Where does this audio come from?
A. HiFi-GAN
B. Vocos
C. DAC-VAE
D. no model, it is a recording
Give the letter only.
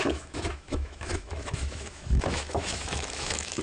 C